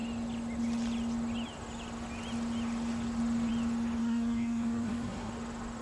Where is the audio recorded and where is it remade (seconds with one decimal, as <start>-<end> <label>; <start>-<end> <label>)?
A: 0.0-4.0 recorded; 4.0-5.3 remade; 5.3-5.8 recorded